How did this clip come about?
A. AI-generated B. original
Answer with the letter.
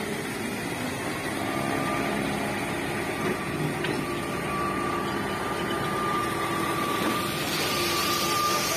B